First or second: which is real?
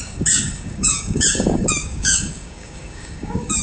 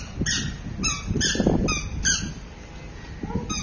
second